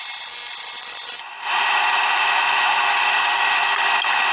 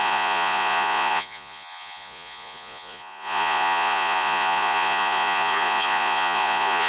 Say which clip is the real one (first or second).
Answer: first